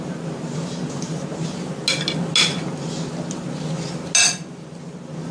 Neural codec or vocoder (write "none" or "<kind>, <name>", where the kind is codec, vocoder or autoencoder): none